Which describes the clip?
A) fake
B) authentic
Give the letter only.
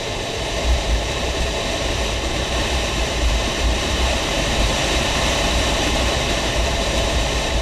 A